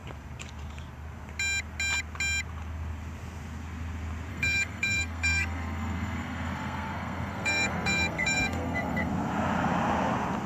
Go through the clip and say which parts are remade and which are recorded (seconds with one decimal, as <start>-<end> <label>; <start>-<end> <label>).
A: 0.0-4.3 recorded; 4.3-9.1 remade; 9.1-10.5 recorded